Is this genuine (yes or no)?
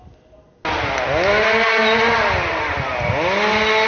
yes